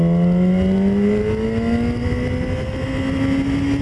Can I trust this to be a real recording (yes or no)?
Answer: yes